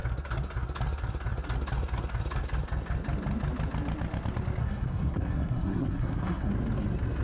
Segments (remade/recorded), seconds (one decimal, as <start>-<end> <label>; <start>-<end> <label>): 0.0-4.6 recorded; 4.6-6.5 remade; 6.5-7.2 recorded